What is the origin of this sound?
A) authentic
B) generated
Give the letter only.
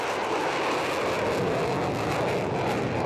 A